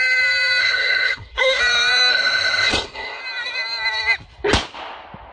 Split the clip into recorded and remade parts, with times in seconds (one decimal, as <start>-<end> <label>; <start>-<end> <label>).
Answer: 0.0-0.6 recorded; 0.6-1.6 remade; 1.6-2.1 recorded; 2.1-3.2 remade; 3.2-5.3 recorded